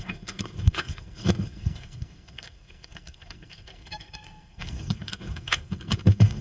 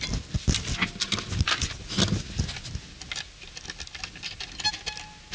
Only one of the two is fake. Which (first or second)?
first